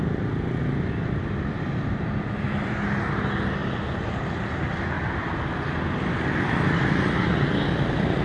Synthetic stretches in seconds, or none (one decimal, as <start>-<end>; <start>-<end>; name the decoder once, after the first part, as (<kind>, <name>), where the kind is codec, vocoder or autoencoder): 3.6-4.2 (vocoder, BigVGAN v2)